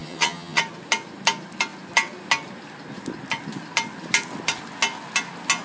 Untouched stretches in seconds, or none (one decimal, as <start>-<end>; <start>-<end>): 0.6-5.6